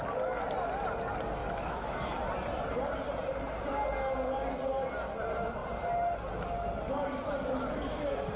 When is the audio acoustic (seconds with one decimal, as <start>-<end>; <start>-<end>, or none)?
0.0-1.4; 2.2-8.4